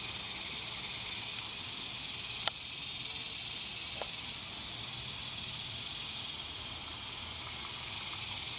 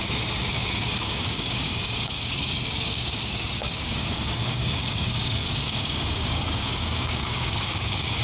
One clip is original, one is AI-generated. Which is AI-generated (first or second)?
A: second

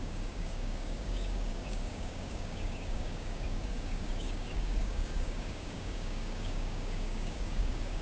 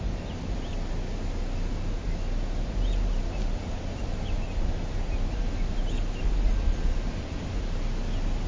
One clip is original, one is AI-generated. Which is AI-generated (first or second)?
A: first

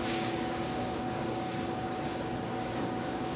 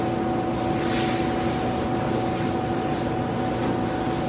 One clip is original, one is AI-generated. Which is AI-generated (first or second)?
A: first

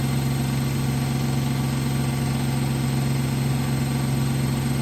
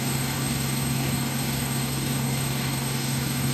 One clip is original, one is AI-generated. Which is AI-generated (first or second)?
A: second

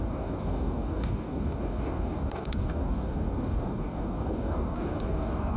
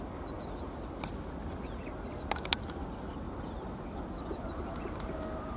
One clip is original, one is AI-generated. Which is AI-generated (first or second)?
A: first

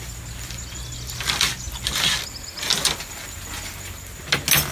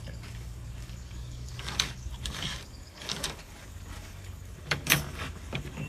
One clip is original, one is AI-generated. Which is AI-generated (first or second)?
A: second